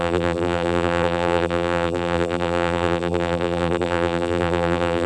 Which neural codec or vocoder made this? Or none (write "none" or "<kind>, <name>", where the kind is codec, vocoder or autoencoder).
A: vocoder, BigVGAN v2